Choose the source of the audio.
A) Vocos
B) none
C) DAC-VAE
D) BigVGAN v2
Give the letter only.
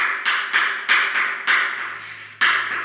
B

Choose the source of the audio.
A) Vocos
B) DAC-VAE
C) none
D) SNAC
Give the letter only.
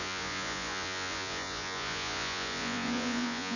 A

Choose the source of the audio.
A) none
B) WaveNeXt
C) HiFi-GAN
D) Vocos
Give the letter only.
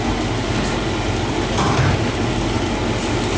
A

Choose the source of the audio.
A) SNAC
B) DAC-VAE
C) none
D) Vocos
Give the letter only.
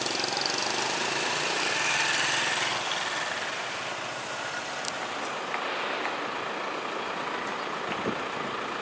C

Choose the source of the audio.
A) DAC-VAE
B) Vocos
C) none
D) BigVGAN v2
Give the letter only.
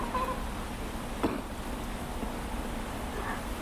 C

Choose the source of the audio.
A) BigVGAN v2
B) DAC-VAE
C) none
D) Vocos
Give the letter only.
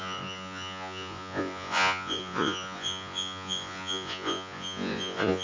D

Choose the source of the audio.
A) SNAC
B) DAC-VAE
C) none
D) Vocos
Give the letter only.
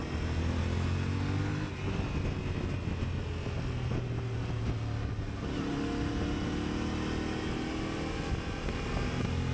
C